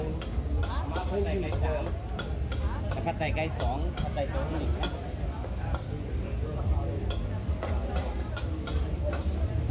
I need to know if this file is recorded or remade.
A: recorded